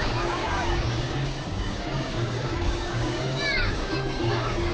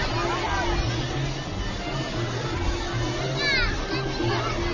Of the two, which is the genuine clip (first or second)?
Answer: second